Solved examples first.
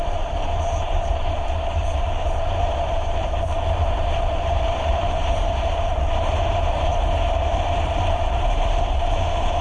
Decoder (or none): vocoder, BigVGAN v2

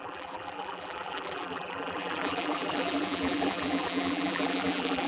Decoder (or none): vocoder, BigVGAN v2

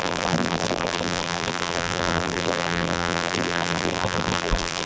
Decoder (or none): vocoder, BigVGAN v2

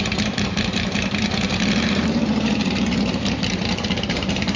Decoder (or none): vocoder, BigVGAN v2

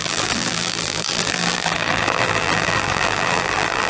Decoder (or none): vocoder, BigVGAN v2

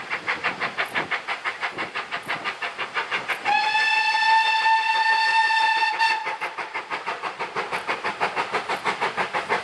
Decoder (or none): none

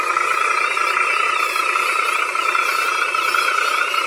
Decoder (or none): vocoder, BigVGAN v2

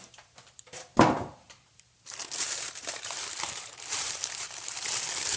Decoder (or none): vocoder, BigVGAN v2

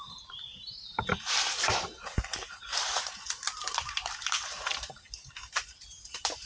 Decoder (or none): vocoder, BigVGAN v2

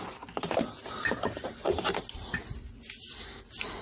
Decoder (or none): none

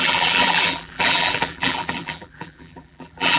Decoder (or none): vocoder, BigVGAN v2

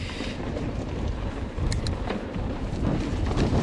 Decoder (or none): vocoder, BigVGAN v2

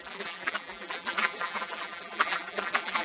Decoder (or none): vocoder, BigVGAN v2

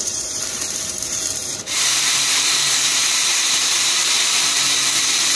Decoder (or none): vocoder, BigVGAN v2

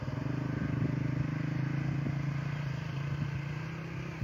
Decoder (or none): none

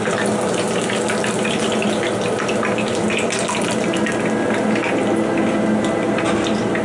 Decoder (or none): none